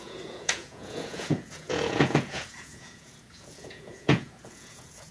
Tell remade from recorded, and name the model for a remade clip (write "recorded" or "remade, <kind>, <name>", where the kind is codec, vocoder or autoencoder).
remade, vocoder, Vocos